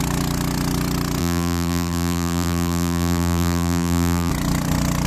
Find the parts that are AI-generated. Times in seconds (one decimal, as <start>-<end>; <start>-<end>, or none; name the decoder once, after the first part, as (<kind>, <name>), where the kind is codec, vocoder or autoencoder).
1.2-4.3 (vocoder, BigVGAN v2)